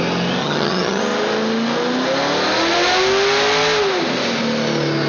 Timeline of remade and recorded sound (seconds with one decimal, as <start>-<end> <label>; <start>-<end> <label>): 0.0-0.4 recorded; 0.4-1.0 remade; 1.0-5.1 recorded